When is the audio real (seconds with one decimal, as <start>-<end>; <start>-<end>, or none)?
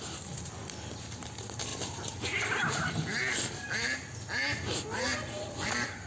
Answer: 0.0-6.1